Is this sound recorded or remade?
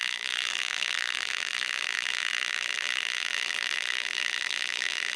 remade